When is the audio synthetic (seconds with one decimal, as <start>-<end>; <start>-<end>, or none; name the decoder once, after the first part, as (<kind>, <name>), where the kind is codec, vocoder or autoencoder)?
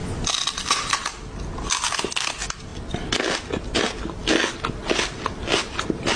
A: none